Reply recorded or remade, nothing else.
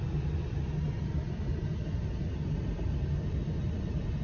recorded